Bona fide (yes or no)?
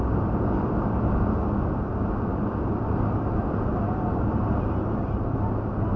yes